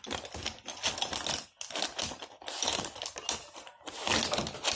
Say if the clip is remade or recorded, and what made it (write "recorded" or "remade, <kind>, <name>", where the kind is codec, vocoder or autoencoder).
recorded